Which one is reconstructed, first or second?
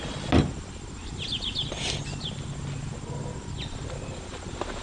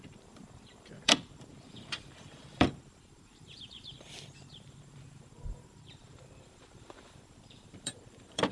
second